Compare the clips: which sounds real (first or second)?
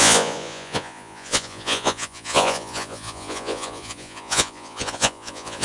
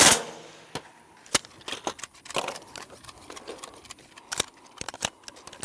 second